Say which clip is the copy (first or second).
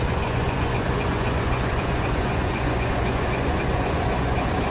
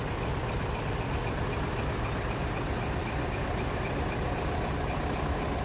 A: first